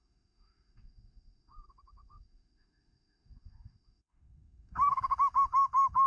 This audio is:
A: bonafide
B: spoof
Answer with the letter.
B